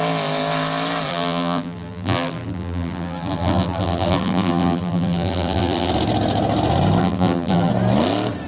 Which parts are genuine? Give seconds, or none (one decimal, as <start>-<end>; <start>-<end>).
0.0-1.1; 5.9-7.0; 7.7-8.5